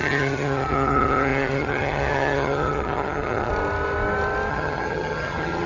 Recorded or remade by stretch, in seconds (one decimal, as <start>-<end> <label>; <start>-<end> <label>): 0.0-3.5 remade; 3.5-4.5 recorded; 4.5-5.7 remade